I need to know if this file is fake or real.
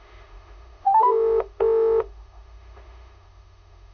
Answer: fake